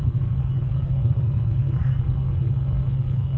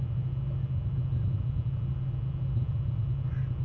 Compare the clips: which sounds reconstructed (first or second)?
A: first